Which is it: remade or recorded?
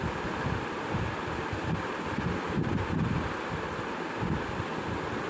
recorded